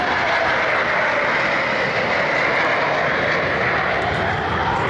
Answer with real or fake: real